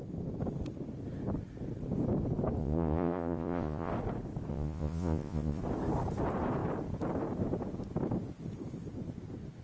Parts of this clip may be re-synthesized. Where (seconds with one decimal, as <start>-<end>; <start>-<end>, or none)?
2.6-3.9; 4.5-5.6